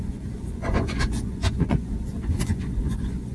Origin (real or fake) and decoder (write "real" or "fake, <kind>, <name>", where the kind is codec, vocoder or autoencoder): fake, vocoder, Vocos